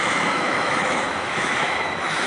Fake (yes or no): yes